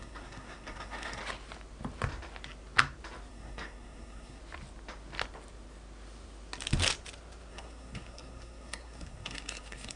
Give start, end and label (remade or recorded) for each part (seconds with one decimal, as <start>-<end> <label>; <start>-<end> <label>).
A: 0.0-1.2 remade; 1.2-3.3 recorded; 3.3-4.4 remade; 4.4-7.5 recorded; 7.5-10.0 remade